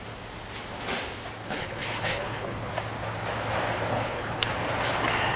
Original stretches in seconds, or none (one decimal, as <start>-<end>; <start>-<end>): 0.0-1.4; 2.7-3.9; 4.5-5.4